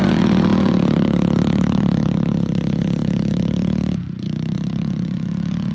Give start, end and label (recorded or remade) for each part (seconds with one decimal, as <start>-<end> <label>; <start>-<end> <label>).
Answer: 0.0-5.7 remade